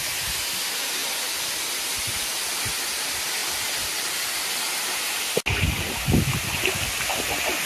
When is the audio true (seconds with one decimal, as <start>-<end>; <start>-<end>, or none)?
0.0-7.7